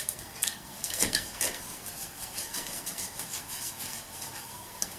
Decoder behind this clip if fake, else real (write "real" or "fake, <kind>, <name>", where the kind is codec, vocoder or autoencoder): fake, codec, SNAC